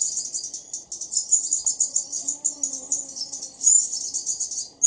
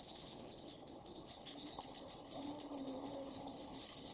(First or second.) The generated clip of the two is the second